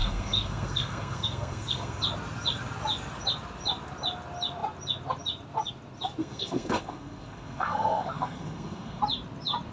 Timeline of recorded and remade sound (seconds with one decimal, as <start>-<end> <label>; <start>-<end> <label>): 0.0-2.0 remade; 2.0-6.2 recorded; 6.2-9.0 remade; 9.0-9.7 recorded